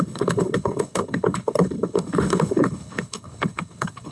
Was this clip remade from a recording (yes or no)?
yes